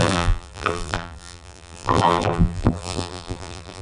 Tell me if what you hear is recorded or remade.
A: remade